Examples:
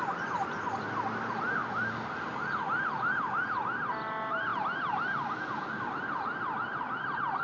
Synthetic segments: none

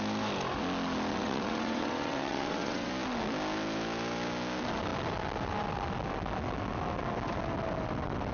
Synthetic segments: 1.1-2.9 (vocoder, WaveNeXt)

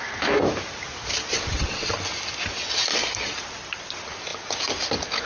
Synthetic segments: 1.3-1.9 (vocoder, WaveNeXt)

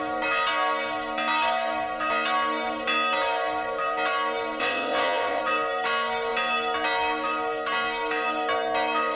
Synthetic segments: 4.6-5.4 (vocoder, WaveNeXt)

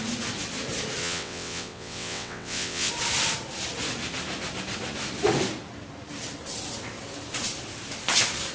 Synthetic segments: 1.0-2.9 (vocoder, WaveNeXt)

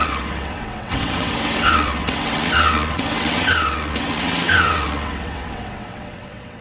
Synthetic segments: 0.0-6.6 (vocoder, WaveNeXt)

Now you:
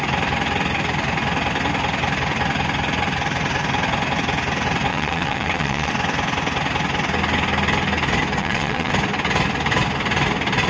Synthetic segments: 4.9-5.9 (vocoder, WaveNeXt); 8.4-8.9